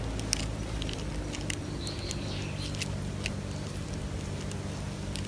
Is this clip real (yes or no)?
yes